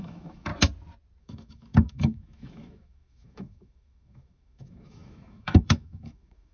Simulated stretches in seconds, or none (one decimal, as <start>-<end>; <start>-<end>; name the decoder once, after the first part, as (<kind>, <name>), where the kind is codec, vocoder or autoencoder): 0.0-0.5 (autoencoder, DAC-VAE); 1.2-6.5

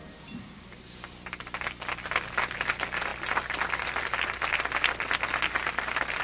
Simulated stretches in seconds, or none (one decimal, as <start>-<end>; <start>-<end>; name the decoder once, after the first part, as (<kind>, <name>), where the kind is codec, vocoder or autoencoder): none

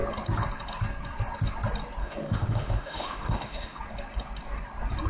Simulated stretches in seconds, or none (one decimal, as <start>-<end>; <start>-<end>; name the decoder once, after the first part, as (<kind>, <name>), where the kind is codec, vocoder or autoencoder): 2.0-3.8 (autoencoder, DAC-VAE)

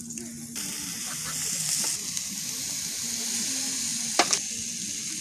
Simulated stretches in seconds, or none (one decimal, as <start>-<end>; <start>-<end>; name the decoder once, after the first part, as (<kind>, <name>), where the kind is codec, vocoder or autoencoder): none

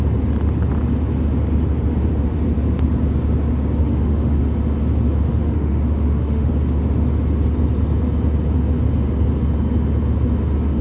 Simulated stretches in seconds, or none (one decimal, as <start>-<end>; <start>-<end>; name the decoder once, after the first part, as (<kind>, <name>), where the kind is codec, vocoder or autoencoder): 3.8-4.4 (autoencoder, DAC-VAE); 5.3-6.5